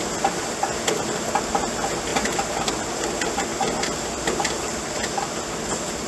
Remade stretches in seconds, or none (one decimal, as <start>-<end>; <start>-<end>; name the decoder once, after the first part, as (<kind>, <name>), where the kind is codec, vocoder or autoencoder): 2.1-2.7 (vocoder, BigVGAN v2); 3.5-4.7